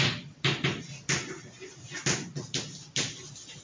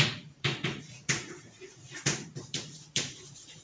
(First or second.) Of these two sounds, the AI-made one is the second